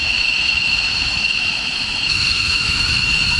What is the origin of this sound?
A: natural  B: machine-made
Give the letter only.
B